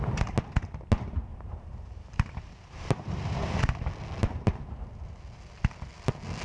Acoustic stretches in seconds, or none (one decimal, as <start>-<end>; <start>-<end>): 0.0-1.3; 3.6-4.2; 4.9-6.4